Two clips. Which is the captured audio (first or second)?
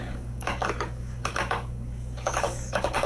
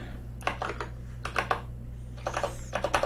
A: second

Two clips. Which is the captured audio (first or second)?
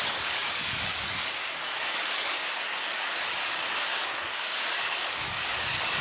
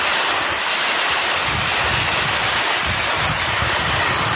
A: second